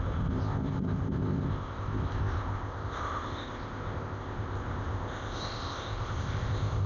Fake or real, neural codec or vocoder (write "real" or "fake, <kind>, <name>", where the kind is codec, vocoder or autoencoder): fake, codec, ZipCodec